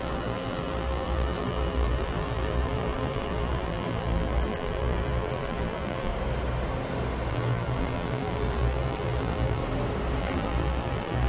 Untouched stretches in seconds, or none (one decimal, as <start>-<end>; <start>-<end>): 6.1-7.3; 9.6-10.2